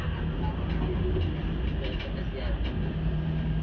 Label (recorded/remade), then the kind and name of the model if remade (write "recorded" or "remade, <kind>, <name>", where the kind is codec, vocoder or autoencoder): recorded